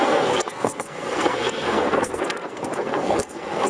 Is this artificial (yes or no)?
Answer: yes